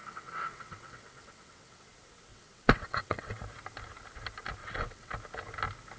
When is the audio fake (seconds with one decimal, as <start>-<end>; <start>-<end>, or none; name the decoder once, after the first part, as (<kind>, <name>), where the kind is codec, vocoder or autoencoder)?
0.0-1.9 (vocoder, WaveNeXt); 2.3-3.4; 4.6-5.1